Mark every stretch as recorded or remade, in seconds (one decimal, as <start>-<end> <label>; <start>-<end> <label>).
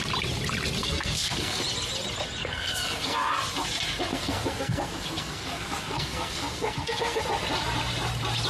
0.0-0.8 recorded; 0.8-1.6 remade; 1.6-2.4 recorded; 2.4-3.3 remade; 3.3-4.1 recorded; 4.1-7.2 remade; 7.2-8.5 recorded